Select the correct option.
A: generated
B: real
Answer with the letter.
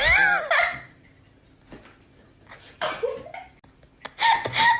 B